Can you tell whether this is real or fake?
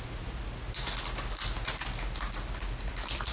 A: real